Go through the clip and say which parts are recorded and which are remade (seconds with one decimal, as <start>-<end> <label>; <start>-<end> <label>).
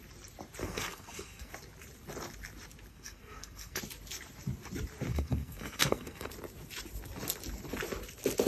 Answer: 0.0-0.6 recorded; 0.6-1.5 remade; 1.5-2.9 recorded; 2.9-3.8 remade; 3.8-5.1 recorded; 5.1-6.3 remade; 6.3-8.5 recorded